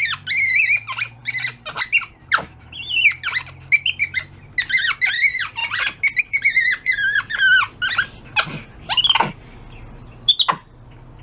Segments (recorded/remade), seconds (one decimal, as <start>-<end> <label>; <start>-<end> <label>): 0.0-11.2 recorded